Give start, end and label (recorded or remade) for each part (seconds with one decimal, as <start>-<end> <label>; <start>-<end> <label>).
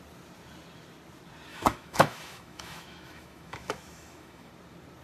0.0-1.5 recorded; 1.5-4.5 remade; 4.5-5.0 recorded